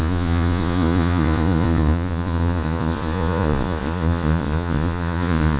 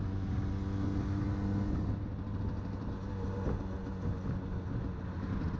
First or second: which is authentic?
second